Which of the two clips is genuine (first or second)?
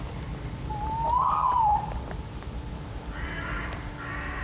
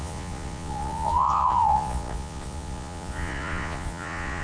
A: first